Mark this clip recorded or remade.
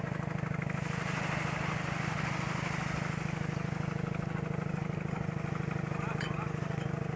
recorded